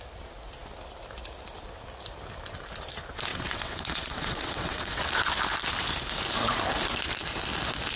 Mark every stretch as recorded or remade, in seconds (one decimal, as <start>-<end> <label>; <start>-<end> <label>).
0.0-3.3 recorded; 3.3-5.0 remade; 5.0-8.0 recorded